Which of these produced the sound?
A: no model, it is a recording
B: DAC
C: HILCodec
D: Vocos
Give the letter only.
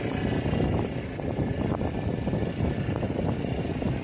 A